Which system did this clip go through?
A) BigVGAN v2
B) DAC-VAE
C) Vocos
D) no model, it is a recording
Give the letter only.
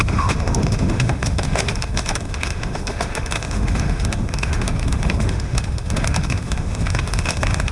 B